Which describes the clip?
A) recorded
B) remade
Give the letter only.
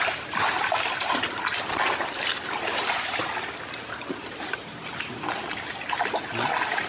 A